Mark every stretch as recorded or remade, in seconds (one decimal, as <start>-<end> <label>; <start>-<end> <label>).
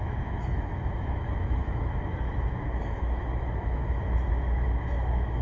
0.0-5.4 remade